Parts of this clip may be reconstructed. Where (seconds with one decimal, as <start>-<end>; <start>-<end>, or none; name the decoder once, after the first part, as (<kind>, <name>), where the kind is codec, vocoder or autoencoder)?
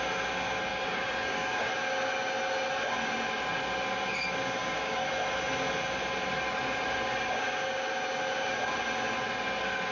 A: 0.7-1.7 (codec, DAC); 4.6-5.1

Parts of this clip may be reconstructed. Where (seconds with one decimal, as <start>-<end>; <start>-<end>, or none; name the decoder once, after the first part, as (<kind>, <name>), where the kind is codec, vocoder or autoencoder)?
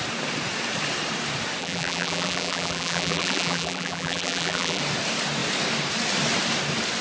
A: 1.6-4.8 (vocoder, BigVGAN v2)